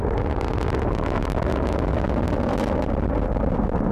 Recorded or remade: recorded